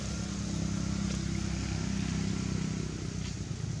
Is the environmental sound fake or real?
real